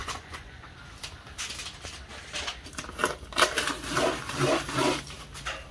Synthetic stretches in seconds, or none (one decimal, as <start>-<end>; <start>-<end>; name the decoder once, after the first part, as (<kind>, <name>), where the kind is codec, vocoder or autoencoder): 0.0-0.7 (vocoder, Vocos)